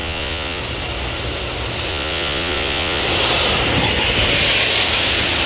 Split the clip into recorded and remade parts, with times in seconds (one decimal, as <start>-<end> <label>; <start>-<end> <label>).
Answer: 0.0-0.6 remade; 0.6-1.9 recorded; 1.9-3.0 remade; 3.0-5.5 recorded